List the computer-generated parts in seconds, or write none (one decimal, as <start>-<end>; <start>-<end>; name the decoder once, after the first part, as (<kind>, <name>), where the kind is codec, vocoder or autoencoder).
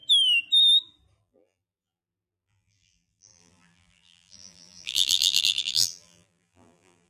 1.2-7.1 (vocoder, BigVGAN v2)